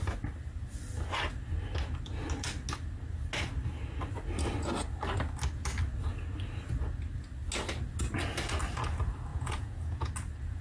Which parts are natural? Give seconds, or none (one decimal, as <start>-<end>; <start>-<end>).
0.0-9.3; 10.1-10.6